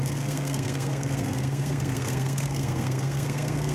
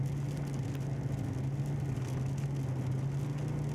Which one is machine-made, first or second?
first